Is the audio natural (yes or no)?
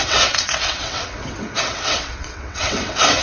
no